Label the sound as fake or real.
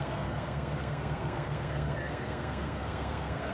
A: fake